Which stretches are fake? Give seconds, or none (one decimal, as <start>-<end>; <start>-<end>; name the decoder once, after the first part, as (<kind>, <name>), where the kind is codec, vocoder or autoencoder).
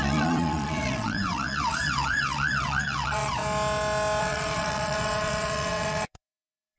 0.0-3.4 (vocoder, WaveNeXt); 4.2-6.8